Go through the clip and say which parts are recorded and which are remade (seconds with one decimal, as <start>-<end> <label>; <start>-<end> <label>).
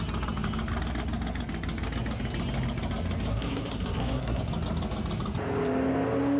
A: 0.0-3.3 recorded; 3.3-4.4 remade; 4.4-6.4 recorded